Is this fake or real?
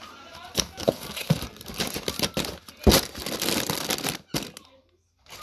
real